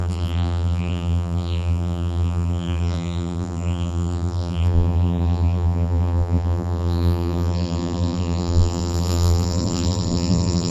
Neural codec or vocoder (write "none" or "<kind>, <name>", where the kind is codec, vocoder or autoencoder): vocoder, BigVGAN v2